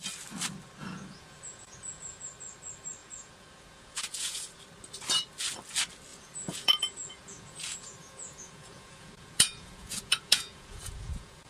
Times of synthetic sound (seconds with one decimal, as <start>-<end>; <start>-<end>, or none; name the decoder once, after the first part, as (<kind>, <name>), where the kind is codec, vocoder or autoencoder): 0.8-2.3 (vocoder, Vocos); 3.0-4.6; 6.1-11.5